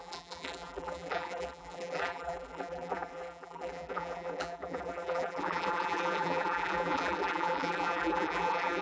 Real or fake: fake